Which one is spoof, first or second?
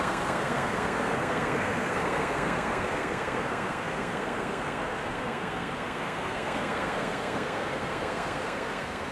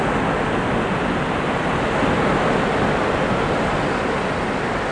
first